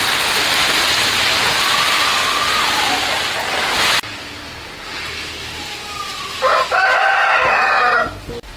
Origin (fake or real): real